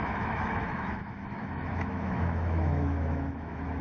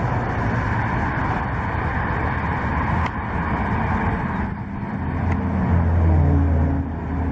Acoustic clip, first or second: second